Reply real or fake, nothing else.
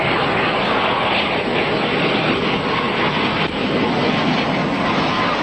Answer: real